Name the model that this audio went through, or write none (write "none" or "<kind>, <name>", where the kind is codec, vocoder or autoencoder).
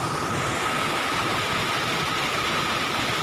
none